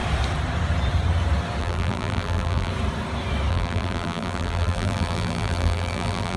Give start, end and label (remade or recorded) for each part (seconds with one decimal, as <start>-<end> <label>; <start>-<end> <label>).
0.0-1.6 recorded; 1.6-2.7 remade; 2.7-3.5 recorded; 3.5-6.4 remade